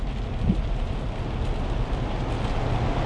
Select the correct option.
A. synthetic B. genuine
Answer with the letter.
B